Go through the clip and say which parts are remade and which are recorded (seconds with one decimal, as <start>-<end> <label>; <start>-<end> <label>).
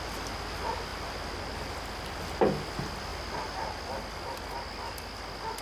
0.0-5.6 recorded